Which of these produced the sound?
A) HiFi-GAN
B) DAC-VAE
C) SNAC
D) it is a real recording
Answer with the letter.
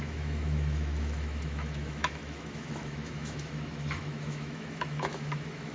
B